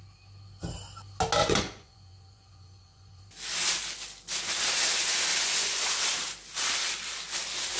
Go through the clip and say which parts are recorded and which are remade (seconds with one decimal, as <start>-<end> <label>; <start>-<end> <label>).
0.0-1.4 recorded; 1.4-3.2 remade; 3.2-5.3 recorded; 5.3-5.9 remade; 5.9-7.8 recorded